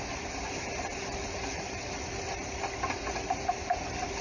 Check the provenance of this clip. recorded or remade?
recorded